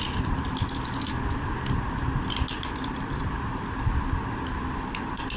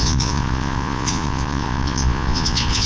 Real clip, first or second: first